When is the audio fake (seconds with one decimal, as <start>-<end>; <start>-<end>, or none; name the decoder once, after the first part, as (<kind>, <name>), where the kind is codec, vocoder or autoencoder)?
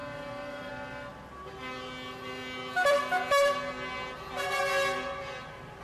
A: 0.0-0.7 (vocoder, BigVGAN v2)